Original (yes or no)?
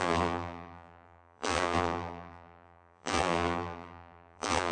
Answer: no